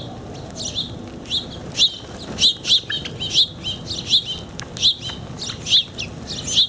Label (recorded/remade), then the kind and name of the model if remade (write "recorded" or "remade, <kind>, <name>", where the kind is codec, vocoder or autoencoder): recorded